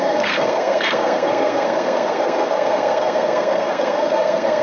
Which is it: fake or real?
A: fake